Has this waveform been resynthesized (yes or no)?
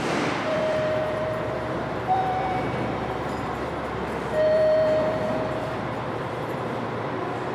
yes